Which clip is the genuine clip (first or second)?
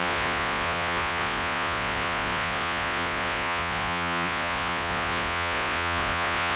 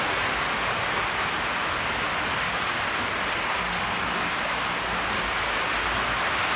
second